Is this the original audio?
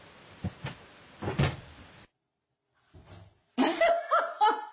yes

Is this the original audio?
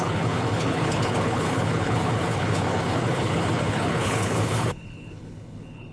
no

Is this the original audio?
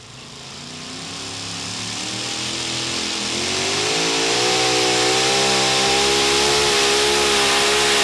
yes